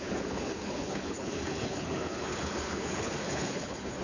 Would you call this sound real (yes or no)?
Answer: no